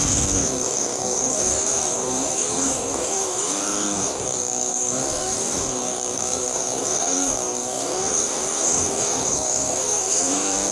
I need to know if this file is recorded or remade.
remade